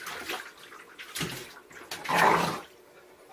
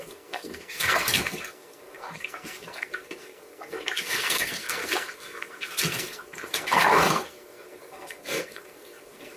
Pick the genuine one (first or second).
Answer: first